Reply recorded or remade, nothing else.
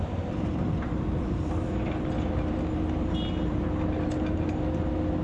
recorded